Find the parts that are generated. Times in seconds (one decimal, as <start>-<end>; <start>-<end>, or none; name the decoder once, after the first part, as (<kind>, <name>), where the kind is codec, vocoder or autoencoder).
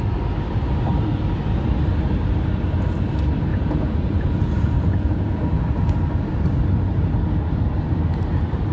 3.5-5.4 (vocoder, Vocos)